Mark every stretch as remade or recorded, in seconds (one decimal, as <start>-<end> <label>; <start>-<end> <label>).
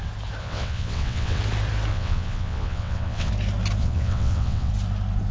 0.0-0.4 recorded; 0.4-1.4 remade; 1.4-1.9 recorded; 1.9-3.3 remade; 3.3-3.8 recorded; 3.8-4.7 remade; 4.7-5.3 recorded